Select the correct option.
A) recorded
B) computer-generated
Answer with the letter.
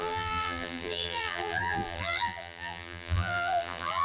B